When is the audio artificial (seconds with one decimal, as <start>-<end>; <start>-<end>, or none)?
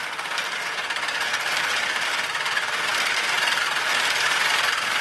none